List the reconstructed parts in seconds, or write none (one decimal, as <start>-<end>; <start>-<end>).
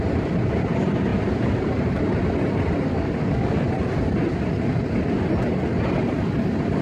2.9-3.6